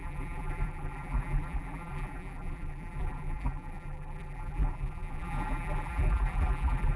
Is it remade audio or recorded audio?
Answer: remade